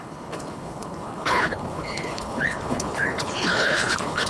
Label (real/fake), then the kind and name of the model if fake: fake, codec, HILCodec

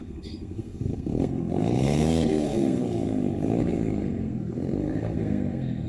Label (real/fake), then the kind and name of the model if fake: fake, codec, SNAC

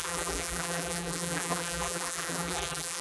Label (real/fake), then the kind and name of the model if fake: fake, vocoder, BigVGAN v2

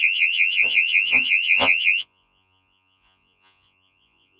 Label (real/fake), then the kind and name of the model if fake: fake, vocoder, Vocos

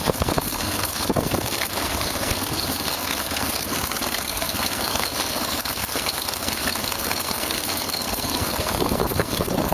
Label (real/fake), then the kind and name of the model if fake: fake, codec, SNAC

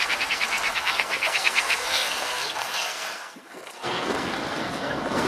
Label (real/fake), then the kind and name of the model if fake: fake, codec, SNAC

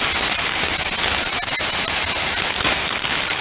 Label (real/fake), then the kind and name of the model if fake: real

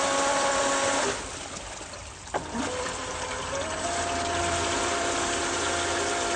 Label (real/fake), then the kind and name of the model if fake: real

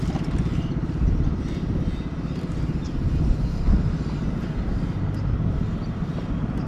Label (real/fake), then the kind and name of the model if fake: real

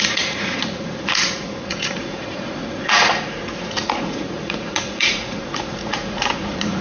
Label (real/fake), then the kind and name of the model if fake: fake, vocoder, Vocos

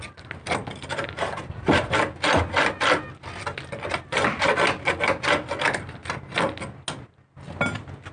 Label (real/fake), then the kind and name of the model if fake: real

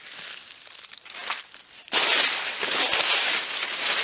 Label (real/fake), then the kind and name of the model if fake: real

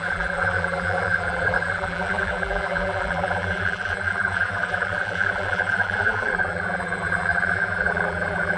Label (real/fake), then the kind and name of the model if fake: fake, vocoder, BigVGAN v2